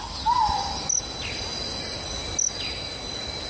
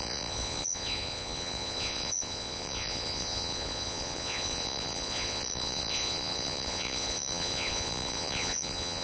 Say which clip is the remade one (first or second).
second